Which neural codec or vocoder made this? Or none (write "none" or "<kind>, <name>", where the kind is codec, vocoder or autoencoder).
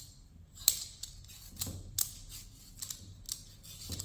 none